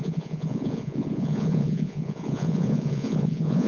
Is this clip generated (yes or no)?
yes